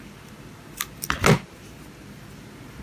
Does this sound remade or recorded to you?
recorded